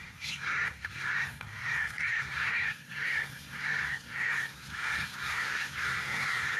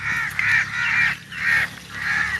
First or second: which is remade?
first